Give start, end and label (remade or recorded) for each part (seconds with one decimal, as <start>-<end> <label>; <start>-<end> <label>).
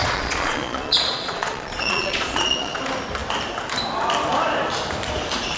0.0-2.8 remade; 2.8-5.6 recorded